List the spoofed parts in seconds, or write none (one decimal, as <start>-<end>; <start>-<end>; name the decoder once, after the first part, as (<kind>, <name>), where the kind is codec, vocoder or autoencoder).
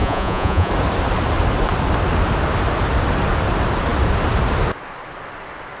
0.0-0.7 (vocoder, Vocos)